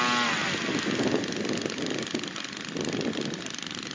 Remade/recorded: recorded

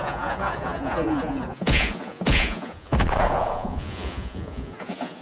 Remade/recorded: remade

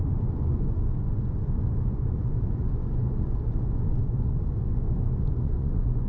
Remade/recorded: remade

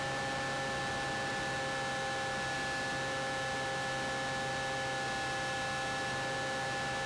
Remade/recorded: recorded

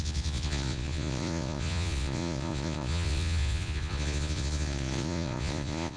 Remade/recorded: remade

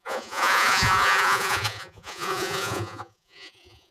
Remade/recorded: remade